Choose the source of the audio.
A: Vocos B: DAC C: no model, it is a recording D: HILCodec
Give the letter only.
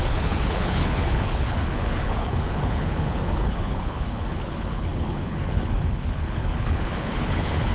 D